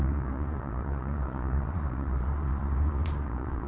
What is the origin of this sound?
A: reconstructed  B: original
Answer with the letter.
A